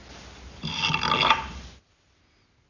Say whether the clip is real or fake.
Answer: real